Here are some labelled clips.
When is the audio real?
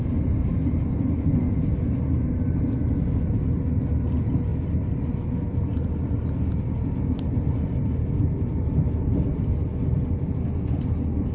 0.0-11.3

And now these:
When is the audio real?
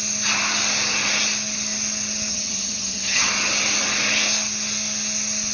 0.0-2.3; 3.3-5.5